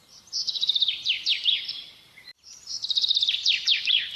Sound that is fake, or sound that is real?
fake